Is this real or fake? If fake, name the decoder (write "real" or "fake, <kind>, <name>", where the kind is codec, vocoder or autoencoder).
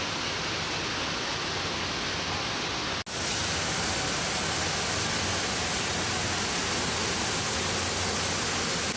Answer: real